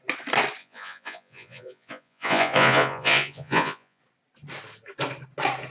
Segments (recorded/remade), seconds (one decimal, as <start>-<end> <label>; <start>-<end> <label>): 0.0-0.6 recorded; 0.6-4.0 remade; 4.0-5.7 recorded